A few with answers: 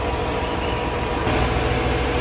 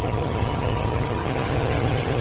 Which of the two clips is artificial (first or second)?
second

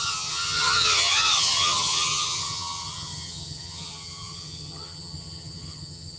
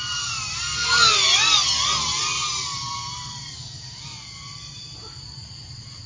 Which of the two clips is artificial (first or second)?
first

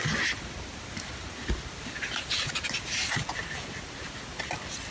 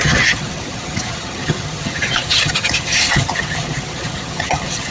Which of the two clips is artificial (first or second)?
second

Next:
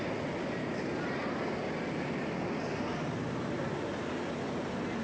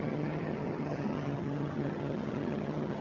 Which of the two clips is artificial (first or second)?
second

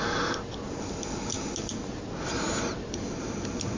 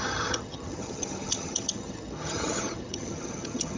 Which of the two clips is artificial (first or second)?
second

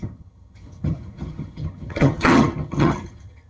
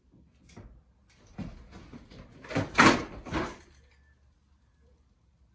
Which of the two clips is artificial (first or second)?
first